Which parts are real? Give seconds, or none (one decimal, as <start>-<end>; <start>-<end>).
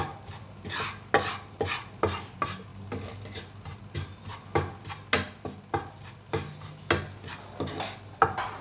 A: 0.0-8.6